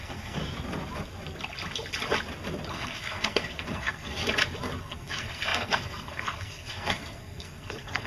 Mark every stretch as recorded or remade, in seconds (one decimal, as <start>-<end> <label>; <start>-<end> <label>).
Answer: 0.0-0.4 remade; 0.4-2.7 recorded; 2.7-4.2 remade; 4.2-4.8 recorded; 4.8-8.1 remade